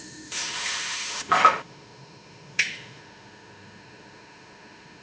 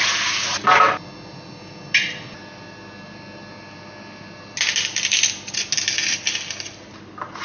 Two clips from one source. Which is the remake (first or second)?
first